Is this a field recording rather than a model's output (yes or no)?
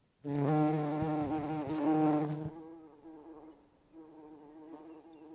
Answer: yes